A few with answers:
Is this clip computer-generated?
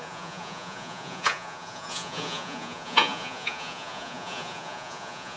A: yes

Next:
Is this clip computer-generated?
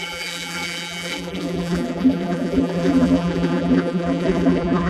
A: yes